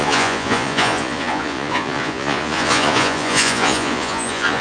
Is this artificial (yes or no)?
yes